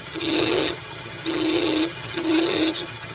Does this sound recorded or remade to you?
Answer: remade